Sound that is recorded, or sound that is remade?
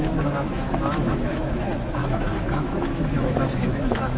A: remade